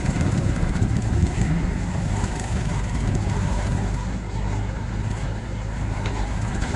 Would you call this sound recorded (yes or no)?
no